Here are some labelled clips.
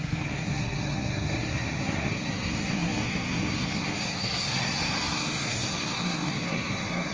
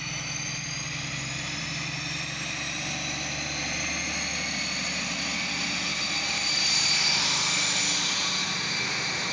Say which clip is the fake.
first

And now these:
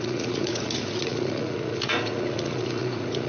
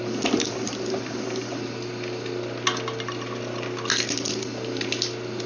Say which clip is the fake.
first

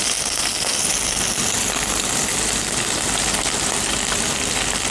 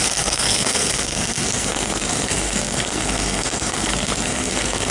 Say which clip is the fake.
second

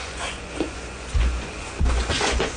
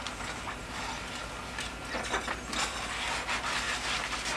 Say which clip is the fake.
first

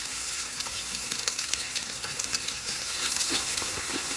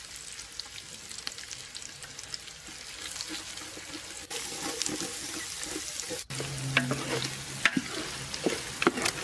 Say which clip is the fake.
first